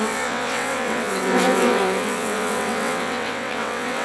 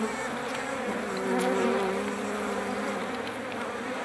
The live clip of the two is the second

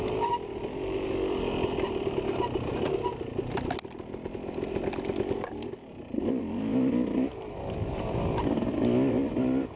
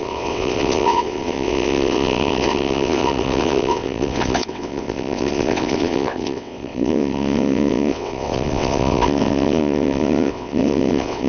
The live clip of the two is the first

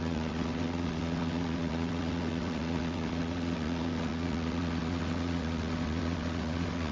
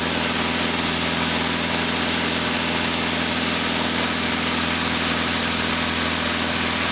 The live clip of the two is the second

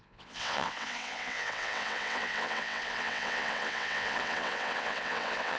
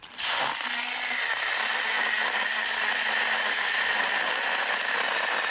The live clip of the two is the second